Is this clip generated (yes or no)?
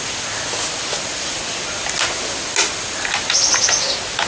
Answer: no